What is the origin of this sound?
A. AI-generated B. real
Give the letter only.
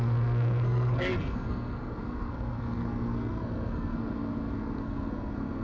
A